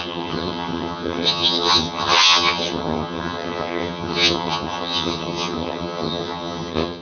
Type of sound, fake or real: fake